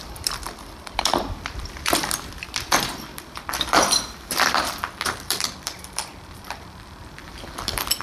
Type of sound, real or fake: fake